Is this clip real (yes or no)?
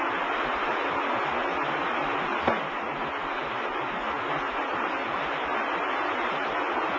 yes